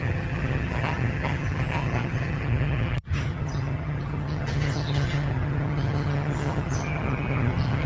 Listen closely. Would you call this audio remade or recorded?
remade